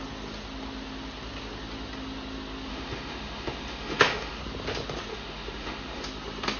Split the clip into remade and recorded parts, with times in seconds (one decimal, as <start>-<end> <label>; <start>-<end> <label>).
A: 0.0-2.7 recorded; 2.7-4.4 remade; 4.4-5.1 recorded; 5.1-6.0 remade; 6.0-6.6 recorded